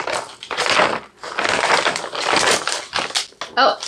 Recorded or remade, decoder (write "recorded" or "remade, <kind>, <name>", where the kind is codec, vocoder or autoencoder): recorded